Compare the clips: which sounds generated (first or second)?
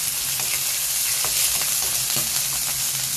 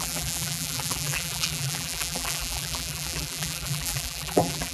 second